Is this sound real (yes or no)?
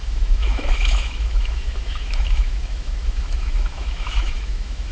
no